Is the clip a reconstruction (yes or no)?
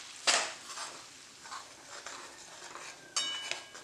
no